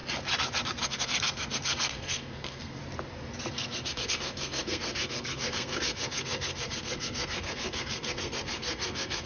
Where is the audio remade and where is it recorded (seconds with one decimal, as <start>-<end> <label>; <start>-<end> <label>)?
0.0-0.8 recorded; 0.8-2.8 remade; 2.8-3.5 recorded; 3.5-9.3 remade